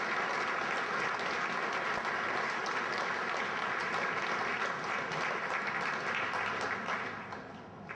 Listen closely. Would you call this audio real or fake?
real